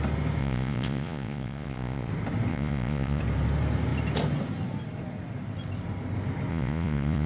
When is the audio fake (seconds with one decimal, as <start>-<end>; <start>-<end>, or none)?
0.4-2.1; 2.5-3.2; 6.5-7.3